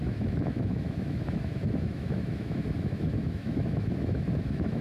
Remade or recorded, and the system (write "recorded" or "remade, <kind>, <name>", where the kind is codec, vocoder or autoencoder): remade, autoencoder, DAC-VAE